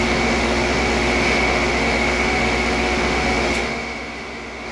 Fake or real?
fake